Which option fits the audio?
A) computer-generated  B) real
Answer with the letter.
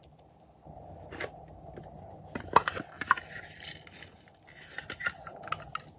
B